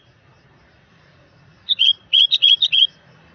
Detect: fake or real fake